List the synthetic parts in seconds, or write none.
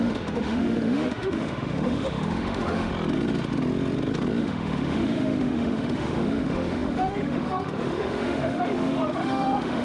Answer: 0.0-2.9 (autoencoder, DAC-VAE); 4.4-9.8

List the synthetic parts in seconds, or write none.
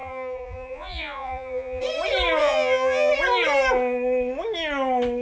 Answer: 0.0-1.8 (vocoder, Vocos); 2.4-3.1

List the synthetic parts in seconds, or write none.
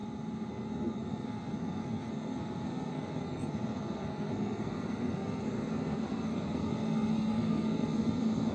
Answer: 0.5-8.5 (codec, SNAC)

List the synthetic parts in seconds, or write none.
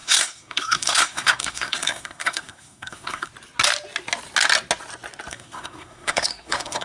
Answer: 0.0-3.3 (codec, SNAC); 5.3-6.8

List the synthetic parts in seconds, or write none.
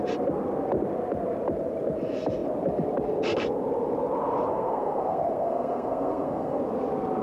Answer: 4.5-6.6 (codec, SNAC)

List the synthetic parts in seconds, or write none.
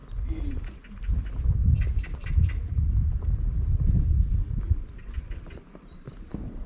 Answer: 1.1-1.6 (vocoder, BigVGAN v2); 5.6-6.7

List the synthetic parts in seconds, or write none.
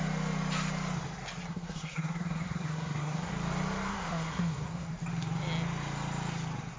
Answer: 1.5-3.3 (codec, SNAC); 3.9-4.9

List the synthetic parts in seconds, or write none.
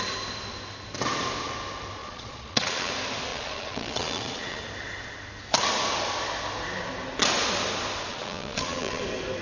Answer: 2.0-2.9 (vocoder, Vocos); 3.3-4.6; 8.1-9.0